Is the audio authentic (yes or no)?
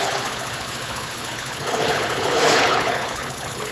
no